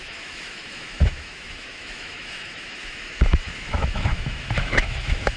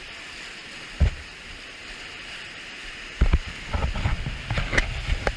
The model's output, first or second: first